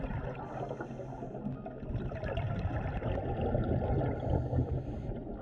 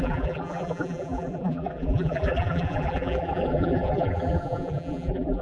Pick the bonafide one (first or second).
first